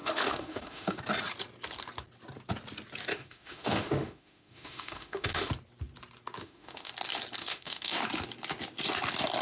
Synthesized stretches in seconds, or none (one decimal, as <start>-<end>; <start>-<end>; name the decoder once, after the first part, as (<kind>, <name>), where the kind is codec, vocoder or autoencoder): 0.0-1.0 (autoencoder, DAC-VAE); 3.1-5.5; 6.4-6.9; 7.4-8.0

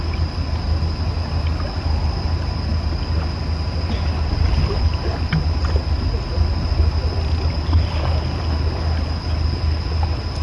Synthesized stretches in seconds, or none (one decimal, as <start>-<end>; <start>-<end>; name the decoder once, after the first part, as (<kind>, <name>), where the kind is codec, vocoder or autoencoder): none